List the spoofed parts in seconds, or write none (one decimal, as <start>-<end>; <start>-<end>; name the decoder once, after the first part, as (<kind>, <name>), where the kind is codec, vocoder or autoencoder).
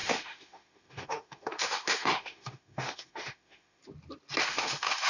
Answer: 0.0-3.8 (autoencoder, DAC-VAE); 4.4-5.1